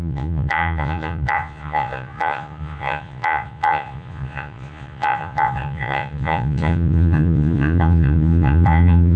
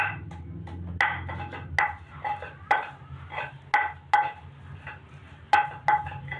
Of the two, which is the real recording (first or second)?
second